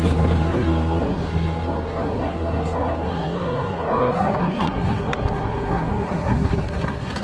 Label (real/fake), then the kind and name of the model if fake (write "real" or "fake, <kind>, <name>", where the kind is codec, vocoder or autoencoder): fake, codec, SNAC